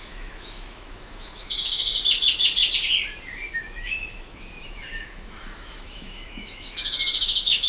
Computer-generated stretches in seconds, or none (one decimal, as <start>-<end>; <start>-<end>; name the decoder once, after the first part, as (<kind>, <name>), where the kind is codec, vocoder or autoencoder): 0.0-1.9 (autoencoder, DAC-VAE); 3.5-7.7